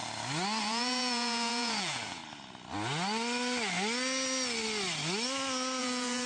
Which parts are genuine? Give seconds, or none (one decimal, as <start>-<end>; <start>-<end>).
0.0-0.6; 2.2-5.8